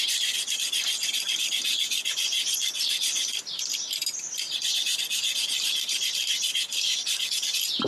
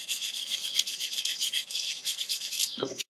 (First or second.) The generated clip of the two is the second